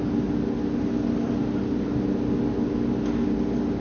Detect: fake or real real